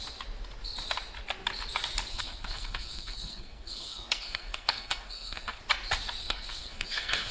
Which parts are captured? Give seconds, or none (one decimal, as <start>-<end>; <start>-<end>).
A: 0.0-2.1; 5.6-6.2